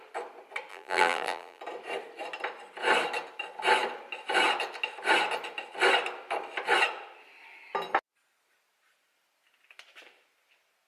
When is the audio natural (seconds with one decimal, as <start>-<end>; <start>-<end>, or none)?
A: 0.0-0.7; 1.6-10.9